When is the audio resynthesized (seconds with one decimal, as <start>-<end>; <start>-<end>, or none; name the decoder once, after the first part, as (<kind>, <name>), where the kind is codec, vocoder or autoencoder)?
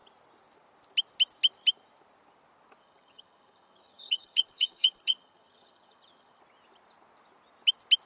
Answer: 2.8-6.4 (vocoder, HiFi-GAN)